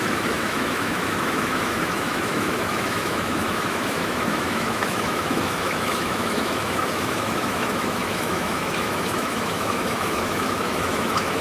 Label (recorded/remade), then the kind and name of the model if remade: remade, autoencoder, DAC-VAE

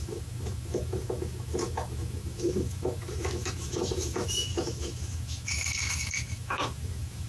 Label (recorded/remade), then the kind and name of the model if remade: remade, autoencoder, DAC-VAE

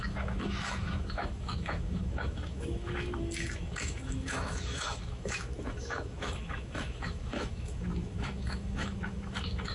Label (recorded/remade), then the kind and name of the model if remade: remade, autoencoder, DAC-VAE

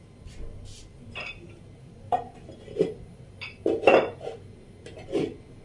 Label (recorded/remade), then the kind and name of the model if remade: recorded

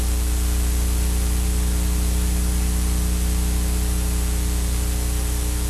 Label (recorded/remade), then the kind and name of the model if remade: recorded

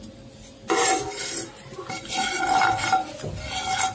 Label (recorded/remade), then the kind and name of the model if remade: recorded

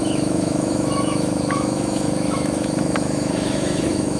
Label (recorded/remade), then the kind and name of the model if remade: remade, autoencoder, DAC-VAE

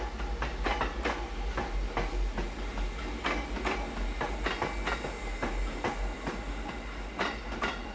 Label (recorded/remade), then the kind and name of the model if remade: recorded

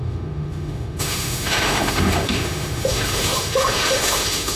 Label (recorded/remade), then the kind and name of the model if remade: remade, autoencoder, DAC-VAE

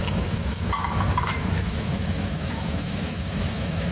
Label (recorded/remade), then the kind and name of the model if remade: remade, autoencoder, DAC-VAE